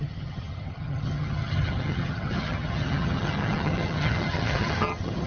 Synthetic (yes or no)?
yes